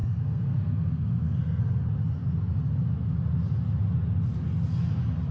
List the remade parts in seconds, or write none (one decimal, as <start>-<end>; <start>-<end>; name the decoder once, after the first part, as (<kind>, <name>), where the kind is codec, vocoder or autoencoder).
0.0-1.6 (codec, SNAC)